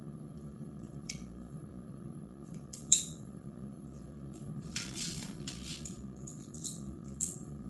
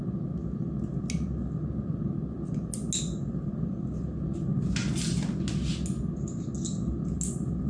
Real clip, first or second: second